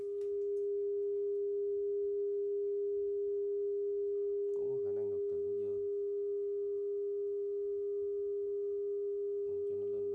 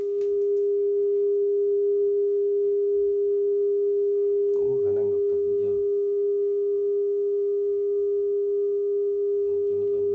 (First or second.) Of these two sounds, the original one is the first